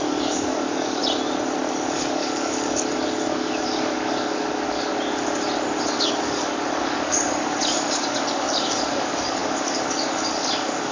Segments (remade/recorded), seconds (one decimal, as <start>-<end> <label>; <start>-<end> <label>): 0.0-1.0 remade; 1.0-1.7 recorded; 1.7-4.9 remade; 4.9-5.9 recorded; 5.9-10.9 remade

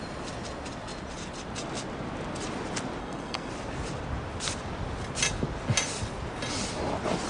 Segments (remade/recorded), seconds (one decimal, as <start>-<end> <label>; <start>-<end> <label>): 0.0-3.0 recorded; 3.0-3.5 remade; 3.5-7.3 recorded

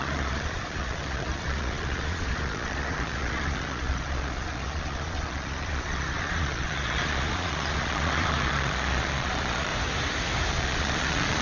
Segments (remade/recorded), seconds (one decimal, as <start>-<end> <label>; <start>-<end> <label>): 0.0-9.7 remade; 9.7-10.5 recorded; 10.5-11.4 remade

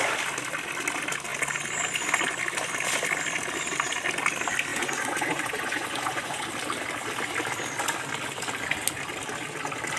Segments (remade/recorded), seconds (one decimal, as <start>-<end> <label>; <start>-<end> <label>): 0.0-4.7 recorded; 4.7-6.5 remade; 6.5-10.0 recorded